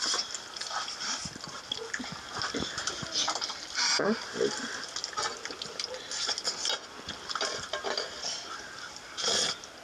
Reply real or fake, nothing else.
real